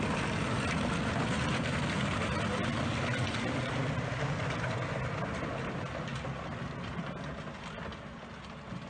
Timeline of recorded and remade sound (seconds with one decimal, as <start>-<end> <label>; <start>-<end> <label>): 0.0-8.9 recorded